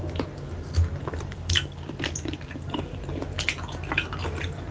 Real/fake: real